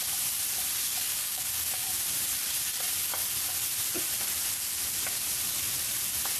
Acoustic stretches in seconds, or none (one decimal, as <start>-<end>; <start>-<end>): 0.0-1.1; 1.9-6.4